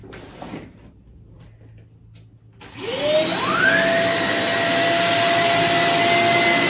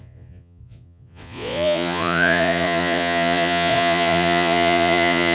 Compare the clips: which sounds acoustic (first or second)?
first